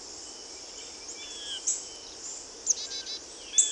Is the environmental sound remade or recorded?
recorded